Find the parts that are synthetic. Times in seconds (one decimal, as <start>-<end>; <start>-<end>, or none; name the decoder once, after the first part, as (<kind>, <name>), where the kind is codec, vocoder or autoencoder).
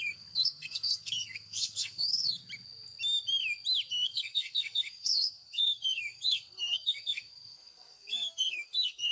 0.0-2.4 (codec, SNAC); 3.9-9.1